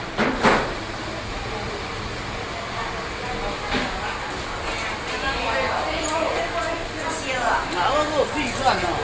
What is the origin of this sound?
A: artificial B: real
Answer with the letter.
B